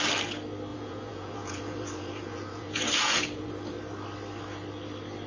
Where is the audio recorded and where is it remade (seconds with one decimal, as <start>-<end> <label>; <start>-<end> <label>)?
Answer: 0.0-0.7 recorded; 0.7-3.5 remade; 3.5-5.3 recorded